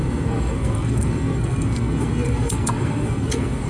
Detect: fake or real fake